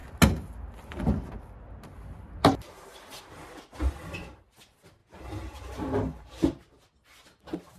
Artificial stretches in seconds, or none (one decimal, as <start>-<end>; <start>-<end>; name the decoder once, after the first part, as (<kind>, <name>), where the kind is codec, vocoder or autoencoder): 2.4-3.2 (vocoder, BigVGAN v2); 5.0-6.3